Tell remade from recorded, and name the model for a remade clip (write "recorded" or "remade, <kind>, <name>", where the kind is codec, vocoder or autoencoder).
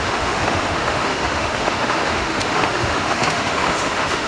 remade, autoencoder, DAC-VAE